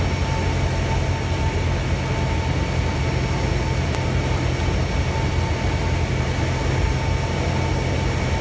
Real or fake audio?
real